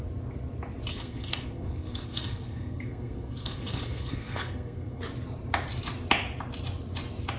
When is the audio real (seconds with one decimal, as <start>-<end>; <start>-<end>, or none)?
0.0-0.9; 5.0-7.4